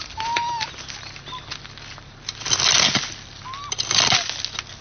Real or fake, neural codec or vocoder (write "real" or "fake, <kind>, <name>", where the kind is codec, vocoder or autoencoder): real